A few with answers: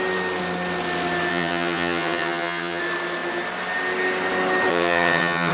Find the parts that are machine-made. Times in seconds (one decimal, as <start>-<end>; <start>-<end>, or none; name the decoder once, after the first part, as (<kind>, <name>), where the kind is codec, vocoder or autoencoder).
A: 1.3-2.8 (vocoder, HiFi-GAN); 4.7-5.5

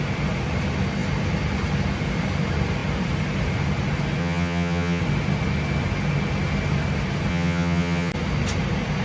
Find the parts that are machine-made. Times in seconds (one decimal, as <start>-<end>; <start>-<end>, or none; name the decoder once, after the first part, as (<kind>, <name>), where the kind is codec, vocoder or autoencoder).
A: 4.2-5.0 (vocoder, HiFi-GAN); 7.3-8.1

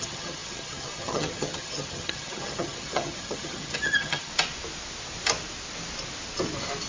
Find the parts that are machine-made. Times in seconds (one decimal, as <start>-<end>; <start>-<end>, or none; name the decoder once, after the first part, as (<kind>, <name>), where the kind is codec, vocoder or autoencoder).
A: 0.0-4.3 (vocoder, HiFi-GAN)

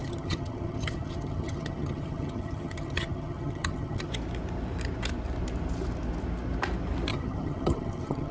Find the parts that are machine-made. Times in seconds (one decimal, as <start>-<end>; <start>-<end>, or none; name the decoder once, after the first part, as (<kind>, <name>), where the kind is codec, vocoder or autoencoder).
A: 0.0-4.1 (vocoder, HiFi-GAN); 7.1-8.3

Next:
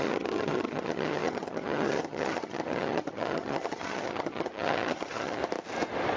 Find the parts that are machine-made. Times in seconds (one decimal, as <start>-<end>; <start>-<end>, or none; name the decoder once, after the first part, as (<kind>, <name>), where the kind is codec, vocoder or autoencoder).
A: 0.0-5.4 (vocoder, HiFi-GAN)